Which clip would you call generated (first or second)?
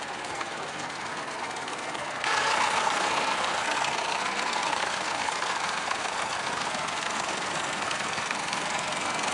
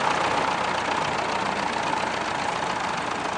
first